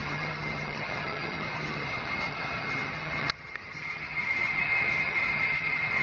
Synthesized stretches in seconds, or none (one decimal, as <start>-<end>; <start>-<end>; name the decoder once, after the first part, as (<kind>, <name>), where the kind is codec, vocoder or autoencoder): 0.0-6.0 (vocoder, HiFi-GAN)